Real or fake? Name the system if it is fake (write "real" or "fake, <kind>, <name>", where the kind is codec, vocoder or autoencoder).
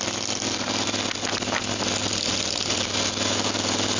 real